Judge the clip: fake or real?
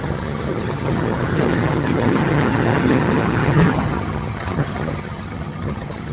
fake